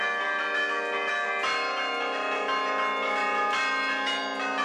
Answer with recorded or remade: recorded